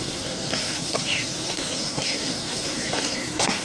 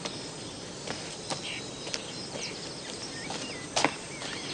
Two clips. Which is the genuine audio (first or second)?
second